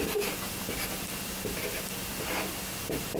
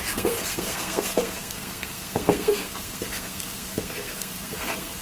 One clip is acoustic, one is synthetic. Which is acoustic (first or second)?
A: first